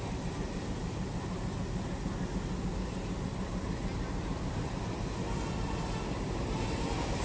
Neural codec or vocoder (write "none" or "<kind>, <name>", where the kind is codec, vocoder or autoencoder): none